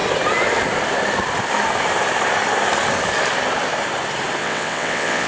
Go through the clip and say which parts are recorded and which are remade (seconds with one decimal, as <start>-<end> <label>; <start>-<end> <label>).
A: 0.0-4.4 recorded; 4.4-5.3 remade